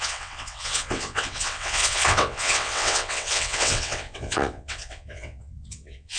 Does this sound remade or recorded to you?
remade